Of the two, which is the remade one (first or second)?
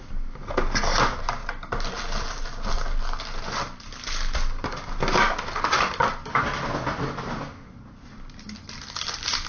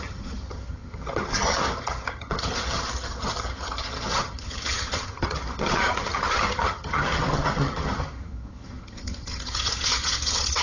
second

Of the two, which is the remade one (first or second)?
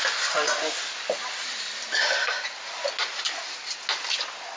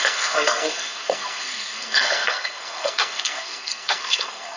second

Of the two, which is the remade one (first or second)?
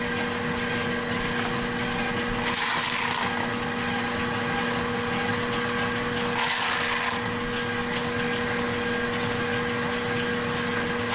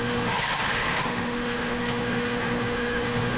second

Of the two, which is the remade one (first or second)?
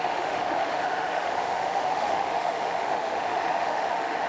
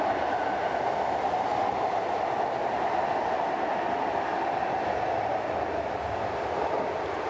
first